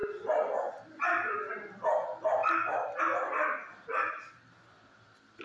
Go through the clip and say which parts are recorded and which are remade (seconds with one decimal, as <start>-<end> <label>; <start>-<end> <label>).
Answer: 0.0-5.4 recorded